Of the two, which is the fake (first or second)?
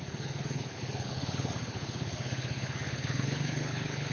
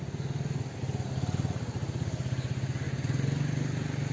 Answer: first